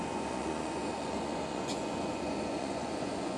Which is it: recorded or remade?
remade